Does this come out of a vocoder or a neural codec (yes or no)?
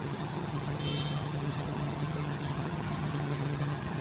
yes